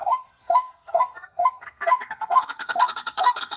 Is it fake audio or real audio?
fake